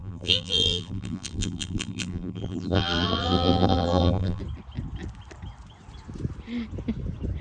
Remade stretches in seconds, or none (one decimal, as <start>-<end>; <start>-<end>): 0.0-4.4